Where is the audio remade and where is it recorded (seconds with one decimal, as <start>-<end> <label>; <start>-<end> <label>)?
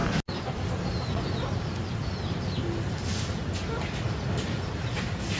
0.0-5.4 recorded